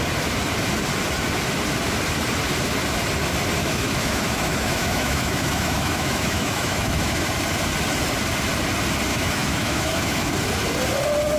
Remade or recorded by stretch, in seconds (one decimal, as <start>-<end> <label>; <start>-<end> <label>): 0.0-3.6 recorded; 3.6-7.2 remade; 7.2-9.1 recorded; 9.1-10.3 remade; 10.3-11.4 recorded